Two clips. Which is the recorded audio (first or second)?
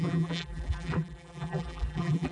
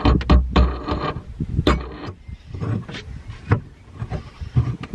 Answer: second